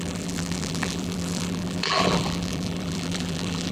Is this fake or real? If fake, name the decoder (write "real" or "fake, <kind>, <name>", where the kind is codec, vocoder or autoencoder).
fake, vocoder, BigVGAN v2